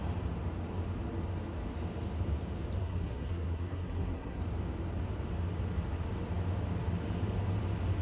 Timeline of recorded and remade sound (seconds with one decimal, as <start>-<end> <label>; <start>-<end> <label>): 0.0-2.8 recorded; 2.8-4.4 remade; 4.4-8.0 recorded